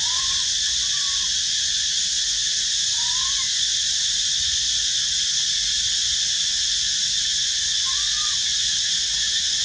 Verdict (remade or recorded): remade